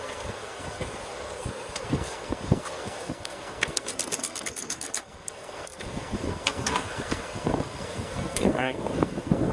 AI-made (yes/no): yes